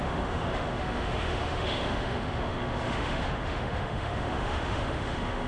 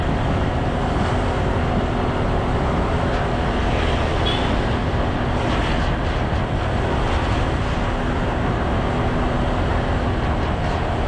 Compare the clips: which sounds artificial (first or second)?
first